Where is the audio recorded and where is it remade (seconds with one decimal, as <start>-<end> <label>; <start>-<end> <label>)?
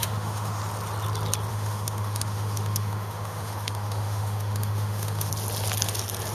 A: 0.0-0.6 remade; 0.6-1.5 recorded; 1.5-5.3 remade; 5.3-6.3 recorded